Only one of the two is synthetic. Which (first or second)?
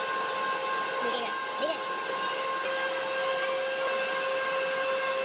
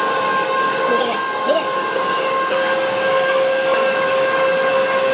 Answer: second